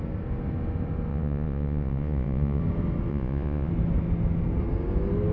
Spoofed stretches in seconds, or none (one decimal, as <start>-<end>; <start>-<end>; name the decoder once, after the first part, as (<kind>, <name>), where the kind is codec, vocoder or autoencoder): 1.1-2.6 (vocoder, Vocos); 3.1-3.7